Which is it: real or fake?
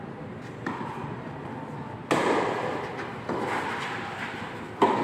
real